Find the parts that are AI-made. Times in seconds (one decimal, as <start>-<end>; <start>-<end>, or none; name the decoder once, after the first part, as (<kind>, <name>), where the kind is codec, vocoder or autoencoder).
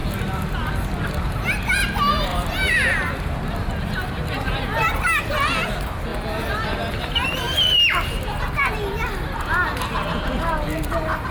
2.3-2.9 (vocoder, BigVGAN v2)